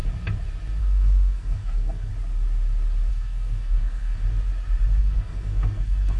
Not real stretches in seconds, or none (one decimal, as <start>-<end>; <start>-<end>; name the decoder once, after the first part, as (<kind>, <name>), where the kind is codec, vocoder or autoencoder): 0.8-2.1 (codec, SNAC); 3.1-4.2; 5.0-6.2